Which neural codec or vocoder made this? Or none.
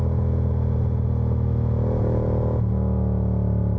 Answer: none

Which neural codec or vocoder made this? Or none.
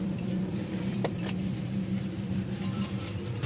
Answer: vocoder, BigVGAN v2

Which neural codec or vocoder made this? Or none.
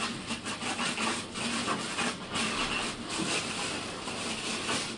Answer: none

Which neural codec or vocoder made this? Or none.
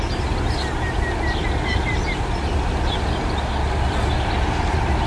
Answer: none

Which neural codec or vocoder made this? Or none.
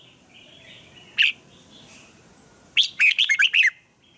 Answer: none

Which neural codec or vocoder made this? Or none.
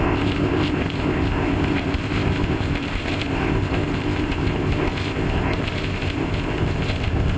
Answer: codec, ZipCodec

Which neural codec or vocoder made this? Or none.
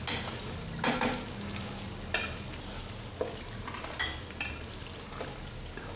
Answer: none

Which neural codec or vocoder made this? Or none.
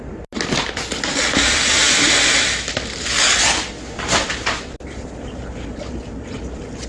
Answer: none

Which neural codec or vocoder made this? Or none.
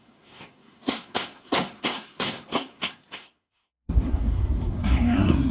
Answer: codec, SNAC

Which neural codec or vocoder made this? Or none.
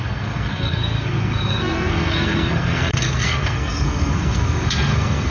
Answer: codec, SNAC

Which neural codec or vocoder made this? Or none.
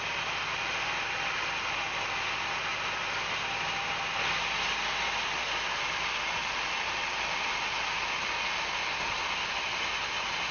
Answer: none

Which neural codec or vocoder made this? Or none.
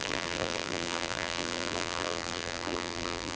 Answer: vocoder, BigVGAN v2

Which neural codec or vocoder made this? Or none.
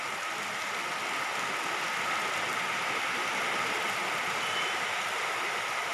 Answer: none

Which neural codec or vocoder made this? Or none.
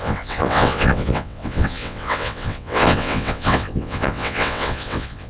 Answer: vocoder, WaveNeXt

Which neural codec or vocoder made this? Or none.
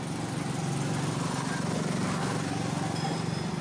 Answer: none